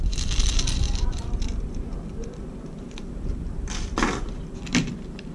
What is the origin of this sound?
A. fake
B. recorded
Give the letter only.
A